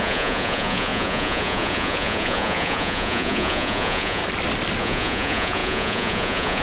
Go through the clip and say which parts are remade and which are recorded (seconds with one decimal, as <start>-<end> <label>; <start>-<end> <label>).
0.0-4.2 remade; 4.2-4.8 recorded; 4.8-6.6 remade